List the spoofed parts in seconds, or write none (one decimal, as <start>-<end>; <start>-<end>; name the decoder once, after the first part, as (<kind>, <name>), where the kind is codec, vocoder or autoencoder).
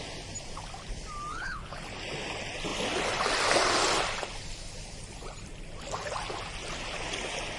1.3-1.8 (codec, HILCodec)